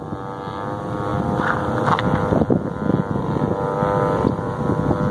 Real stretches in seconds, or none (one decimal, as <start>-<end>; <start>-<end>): 0.0-5.1